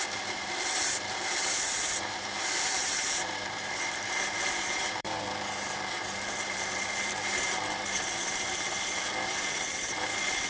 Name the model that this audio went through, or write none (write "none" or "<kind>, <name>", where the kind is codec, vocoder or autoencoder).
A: vocoder, BigVGAN v2